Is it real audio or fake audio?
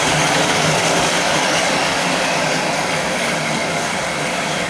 fake